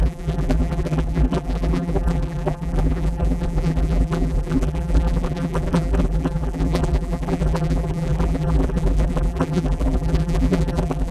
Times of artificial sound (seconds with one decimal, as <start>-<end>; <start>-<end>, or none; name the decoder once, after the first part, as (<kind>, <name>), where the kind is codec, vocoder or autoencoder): 0.0-11.1 (vocoder, BigVGAN v2)